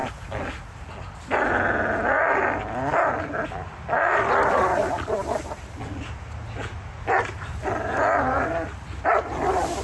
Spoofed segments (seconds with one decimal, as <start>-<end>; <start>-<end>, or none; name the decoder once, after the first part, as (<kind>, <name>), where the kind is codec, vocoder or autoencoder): none